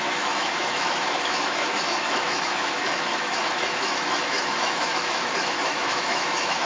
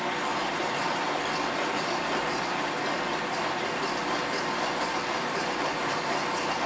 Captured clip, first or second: second